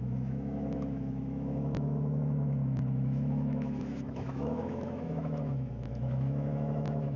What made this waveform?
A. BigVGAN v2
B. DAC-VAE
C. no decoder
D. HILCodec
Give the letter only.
B